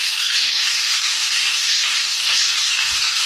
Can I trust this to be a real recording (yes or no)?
no